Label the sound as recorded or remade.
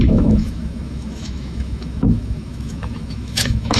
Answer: remade